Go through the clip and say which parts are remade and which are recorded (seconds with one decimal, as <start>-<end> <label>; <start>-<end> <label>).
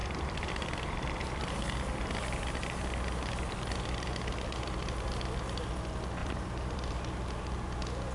0.0-1.7 remade; 1.7-6.2 recorded; 6.2-6.9 remade; 6.9-8.1 recorded